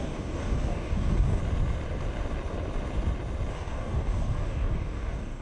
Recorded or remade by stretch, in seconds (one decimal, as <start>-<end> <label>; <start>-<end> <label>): 0.0-1.4 remade; 1.4-3.5 recorded; 3.5-5.4 remade